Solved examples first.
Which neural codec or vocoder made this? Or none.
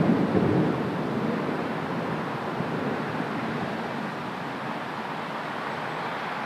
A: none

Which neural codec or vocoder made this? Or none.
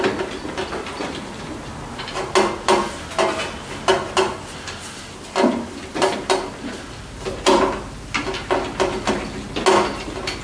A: none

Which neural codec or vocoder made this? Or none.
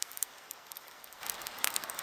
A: codec, SNAC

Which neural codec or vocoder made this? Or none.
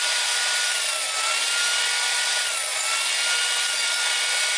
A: none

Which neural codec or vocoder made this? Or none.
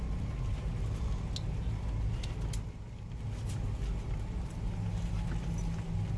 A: none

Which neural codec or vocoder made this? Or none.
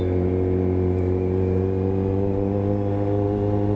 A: none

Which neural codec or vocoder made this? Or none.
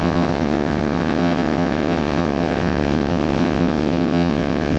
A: vocoder, WaveNeXt